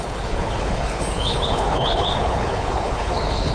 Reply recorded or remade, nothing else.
remade